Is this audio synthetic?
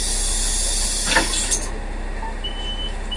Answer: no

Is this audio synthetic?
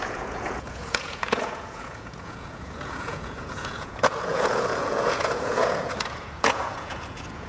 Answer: yes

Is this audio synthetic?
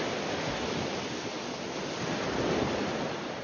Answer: no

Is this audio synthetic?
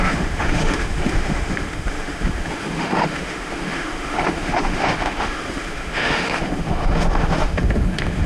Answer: yes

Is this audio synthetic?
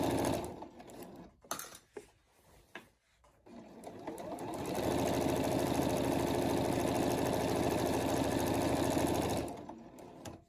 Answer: no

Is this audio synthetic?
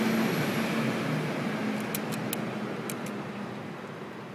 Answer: no